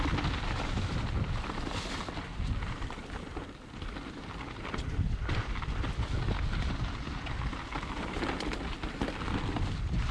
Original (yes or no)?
yes